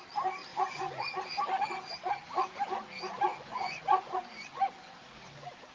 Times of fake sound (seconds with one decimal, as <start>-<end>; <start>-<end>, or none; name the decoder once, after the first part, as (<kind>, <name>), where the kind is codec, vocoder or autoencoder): 0.5-2.1 (vocoder, Vocos); 3.3-5.0